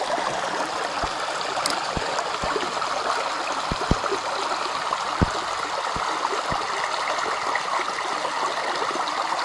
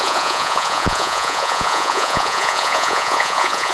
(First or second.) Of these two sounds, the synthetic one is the second